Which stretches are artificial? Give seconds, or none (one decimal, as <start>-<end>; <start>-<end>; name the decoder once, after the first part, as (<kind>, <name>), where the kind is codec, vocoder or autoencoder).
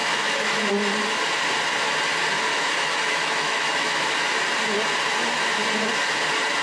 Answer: 0.0-0.7 (autoencoder, DAC-VAE); 2.5-4.1